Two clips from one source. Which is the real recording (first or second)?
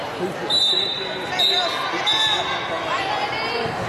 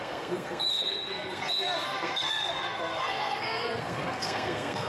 first